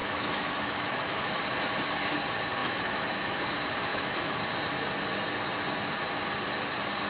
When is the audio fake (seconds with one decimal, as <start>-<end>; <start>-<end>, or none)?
0.0-1.4; 2.6-3.4; 3.9-4.4